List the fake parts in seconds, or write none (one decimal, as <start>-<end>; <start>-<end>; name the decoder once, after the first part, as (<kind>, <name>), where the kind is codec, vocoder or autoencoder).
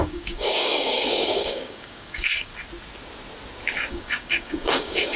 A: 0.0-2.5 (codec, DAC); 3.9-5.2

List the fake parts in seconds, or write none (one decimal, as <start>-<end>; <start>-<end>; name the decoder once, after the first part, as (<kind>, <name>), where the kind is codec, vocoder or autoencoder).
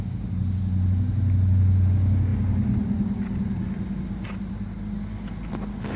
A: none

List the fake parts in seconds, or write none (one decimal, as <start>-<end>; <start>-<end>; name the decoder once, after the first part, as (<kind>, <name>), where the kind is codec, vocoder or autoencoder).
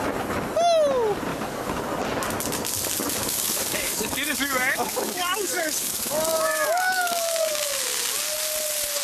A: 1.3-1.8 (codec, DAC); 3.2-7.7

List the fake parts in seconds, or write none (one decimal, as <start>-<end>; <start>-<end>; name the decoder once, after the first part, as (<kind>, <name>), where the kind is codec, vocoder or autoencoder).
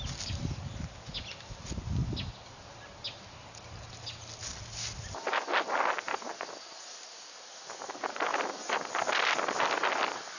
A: none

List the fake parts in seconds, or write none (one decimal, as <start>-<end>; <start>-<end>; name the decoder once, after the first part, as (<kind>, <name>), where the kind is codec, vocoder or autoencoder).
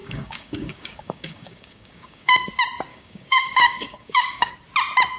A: 0.0-2.5 (codec, DAC); 2.9-4.5